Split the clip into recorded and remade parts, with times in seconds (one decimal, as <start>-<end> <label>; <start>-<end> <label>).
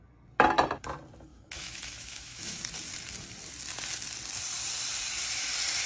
0.0-1.3 recorded; 1.3-2.6 remade; 2.6-5.9 recorded